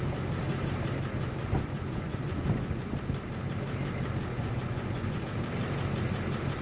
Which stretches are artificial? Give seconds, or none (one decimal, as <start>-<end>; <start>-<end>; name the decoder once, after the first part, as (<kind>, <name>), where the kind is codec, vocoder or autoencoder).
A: 1.4-2.9 (vocoder, Vocos); 4.3-5.2